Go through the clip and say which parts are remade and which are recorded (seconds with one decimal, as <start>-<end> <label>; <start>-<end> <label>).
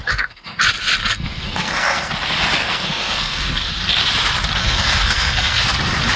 0.0-0.6 remade; 0.6-1.0 recorded; 1.0-2.1 remade; 2.1-2.6 recorded; 2.6-3.7 remade; 3.7-4.6 recorded; 4.6-5.6 remade; 5.6-6.2 recorded